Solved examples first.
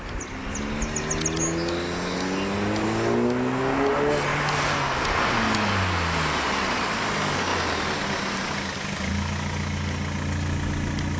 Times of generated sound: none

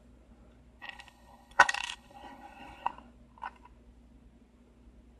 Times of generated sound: 0.8-2.9 (codec, HILCodec)